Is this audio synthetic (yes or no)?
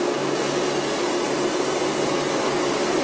no